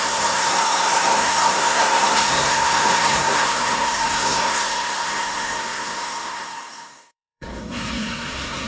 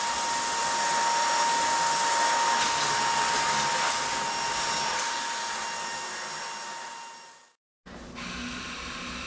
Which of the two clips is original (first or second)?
second